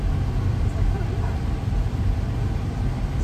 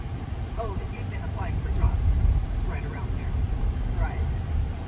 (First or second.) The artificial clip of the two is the second